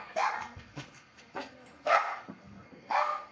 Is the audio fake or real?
fake